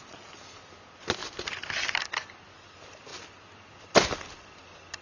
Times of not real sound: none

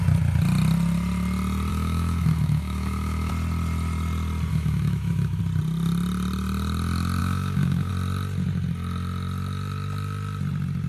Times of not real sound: 1.7-3.3 (autoencoder, DAC-VAE); 4.5-5.4; 7.2-7.9

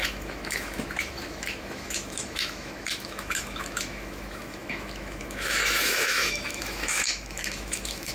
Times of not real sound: 0.0-8.1 (autoencoder, DAC-VAE)

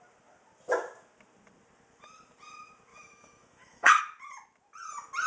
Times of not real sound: 2.9-4.0 (autoencoder, DAC-VAE)